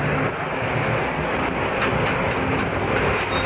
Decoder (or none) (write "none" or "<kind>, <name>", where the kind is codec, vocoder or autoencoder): none